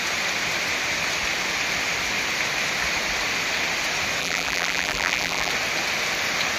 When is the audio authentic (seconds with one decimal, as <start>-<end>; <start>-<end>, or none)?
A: 0.0-4.2; 5.5-6.6